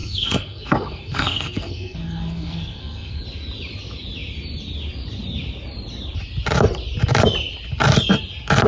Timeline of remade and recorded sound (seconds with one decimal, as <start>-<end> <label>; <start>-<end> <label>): 0.0-3.2 remade; 3.2-8.7 recorded